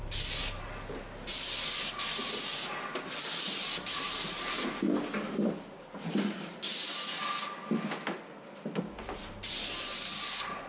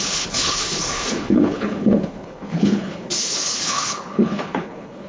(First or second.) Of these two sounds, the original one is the first